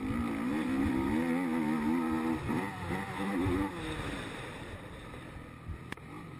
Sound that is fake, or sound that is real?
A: real